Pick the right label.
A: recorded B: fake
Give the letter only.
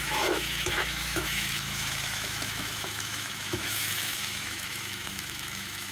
B